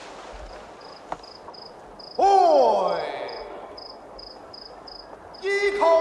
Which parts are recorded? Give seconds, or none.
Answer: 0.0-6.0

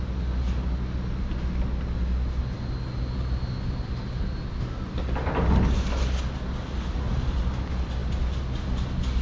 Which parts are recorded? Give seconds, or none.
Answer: 0.0-9.2

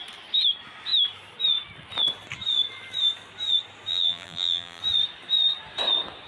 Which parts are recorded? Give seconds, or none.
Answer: 0.0-3.9; 4.8-6.3

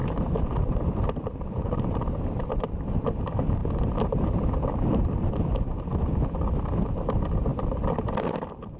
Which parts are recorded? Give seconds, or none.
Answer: 2.1-3.6; 4.5-8.8

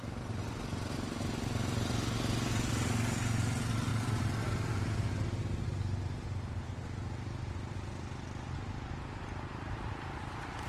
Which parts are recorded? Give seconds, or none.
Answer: 0.0-10.7

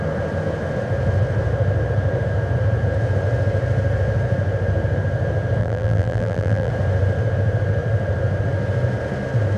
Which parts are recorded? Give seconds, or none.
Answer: 0.0-5.6; 6.7-9.6

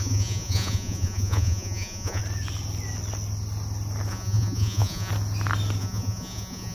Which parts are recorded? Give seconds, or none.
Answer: 2.2-4.1; 5.1-5.8

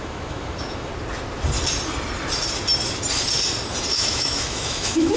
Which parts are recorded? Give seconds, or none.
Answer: 0.9-3.9